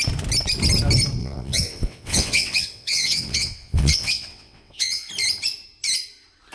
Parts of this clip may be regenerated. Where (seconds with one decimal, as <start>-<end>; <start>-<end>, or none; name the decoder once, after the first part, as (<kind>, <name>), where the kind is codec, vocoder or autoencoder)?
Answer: 1.2-5.1 (vocoder, WaveNeXt)